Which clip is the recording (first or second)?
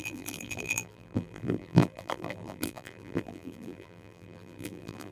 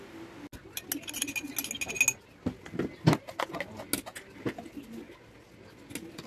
second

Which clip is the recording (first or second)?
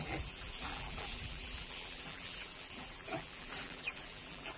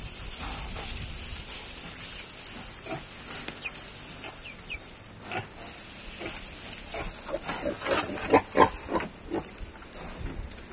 second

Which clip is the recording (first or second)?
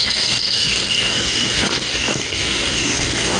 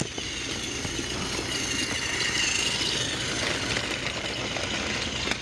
second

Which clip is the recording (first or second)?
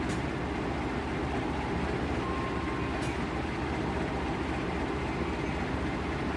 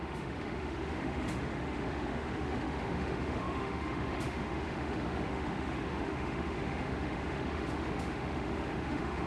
first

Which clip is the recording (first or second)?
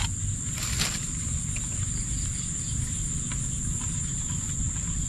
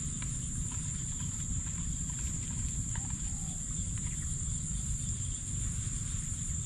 first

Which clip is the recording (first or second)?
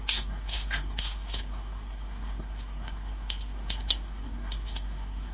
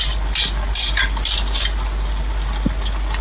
second